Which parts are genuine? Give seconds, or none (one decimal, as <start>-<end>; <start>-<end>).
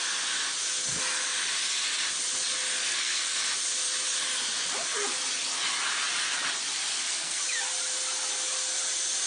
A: 0.0-2.8; 3.4-6.9; 7.4-9.3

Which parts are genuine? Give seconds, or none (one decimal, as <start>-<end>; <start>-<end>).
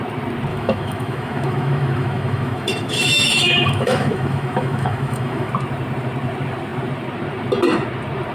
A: 0.0-0.5; 5.5-8.3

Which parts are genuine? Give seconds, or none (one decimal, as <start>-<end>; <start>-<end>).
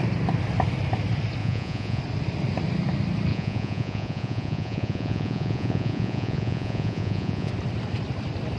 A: 0.0-1.4; 2.0-3.3; 7.5-8.6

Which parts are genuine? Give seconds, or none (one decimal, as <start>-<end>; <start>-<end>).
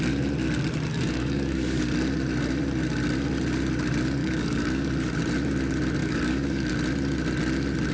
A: 0.0-0.9; 1.8-4.2; 4.9-6.0; 6.7-7.9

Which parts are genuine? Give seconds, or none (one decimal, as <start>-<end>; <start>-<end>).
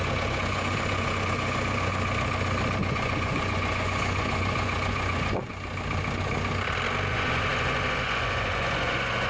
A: 1.9-2.8; 5.5-7.1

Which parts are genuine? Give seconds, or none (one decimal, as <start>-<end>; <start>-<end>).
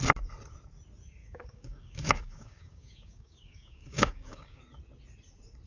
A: 0.0-1.2; 4.6-5.7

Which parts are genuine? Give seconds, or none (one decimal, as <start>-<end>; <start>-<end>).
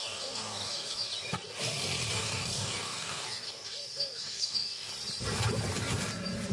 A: 1.1-2.1; 4.9-6.5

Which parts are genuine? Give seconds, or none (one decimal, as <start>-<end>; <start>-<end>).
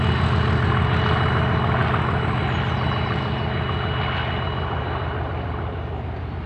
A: 0.0-6.5